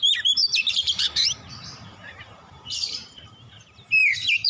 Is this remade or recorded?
remade